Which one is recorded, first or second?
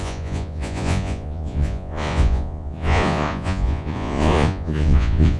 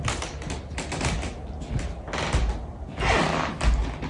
second